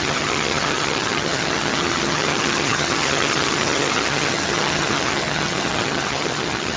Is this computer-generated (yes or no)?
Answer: yes